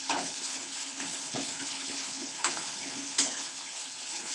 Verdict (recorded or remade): remade